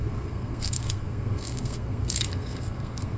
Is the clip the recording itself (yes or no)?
no